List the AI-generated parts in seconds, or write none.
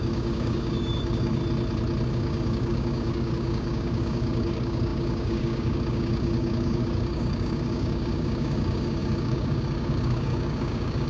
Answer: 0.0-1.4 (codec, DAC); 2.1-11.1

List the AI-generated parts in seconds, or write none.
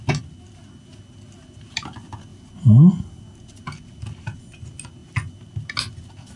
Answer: none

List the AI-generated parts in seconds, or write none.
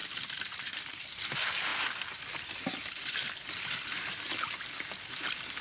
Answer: 0.0-0.7 (vocoder, BigVGAN v2)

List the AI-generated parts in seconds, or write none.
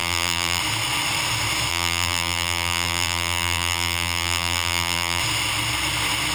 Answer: 0.0-0.6 (vocoder, BigVGAN v2); 1.7-5.2